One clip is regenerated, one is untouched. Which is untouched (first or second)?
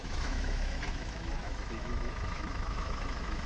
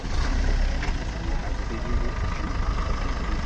second